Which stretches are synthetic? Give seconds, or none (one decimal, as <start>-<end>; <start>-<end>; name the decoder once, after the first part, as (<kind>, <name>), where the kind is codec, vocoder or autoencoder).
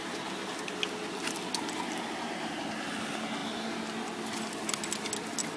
none